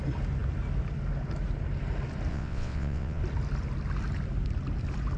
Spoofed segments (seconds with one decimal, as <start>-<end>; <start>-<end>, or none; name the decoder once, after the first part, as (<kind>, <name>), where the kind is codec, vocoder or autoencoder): 2.3-3.2 (vocoder, WaveNeXt)